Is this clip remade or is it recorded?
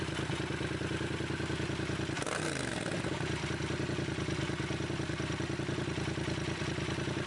recorded